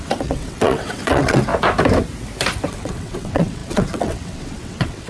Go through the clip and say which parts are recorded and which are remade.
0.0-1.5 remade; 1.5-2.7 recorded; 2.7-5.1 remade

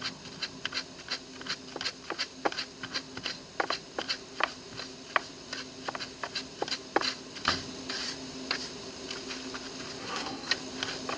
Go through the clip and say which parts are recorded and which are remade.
0.0-10.0 recorded; 10.0-10.5 remade; 10.5-11.2 recorded

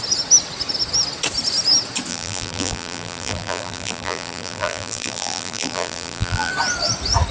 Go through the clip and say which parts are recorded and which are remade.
0.0-2.1 recorded; 2.1-6.5 remade; 6.5-7.3 recorded

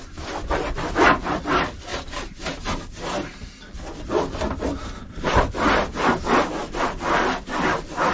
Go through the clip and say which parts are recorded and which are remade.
0.0-1.9 recorded; 1.9-2.6 remade; 2.6-4.7 recorded; 4.7-5.4 remade; 5.4-6.6 recorded; 6.6-7.2 remade; 7.2-8.1 recorded